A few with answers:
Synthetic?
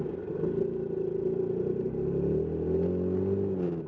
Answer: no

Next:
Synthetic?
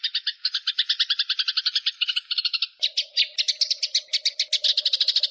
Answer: no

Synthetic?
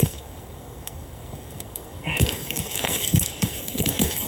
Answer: yes